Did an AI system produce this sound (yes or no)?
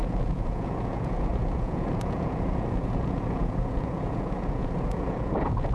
yes